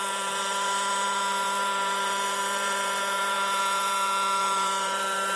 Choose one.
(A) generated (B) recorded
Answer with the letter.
A